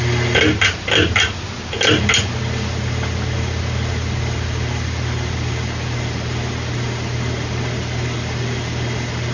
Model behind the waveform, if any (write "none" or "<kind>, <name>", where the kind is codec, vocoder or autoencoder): none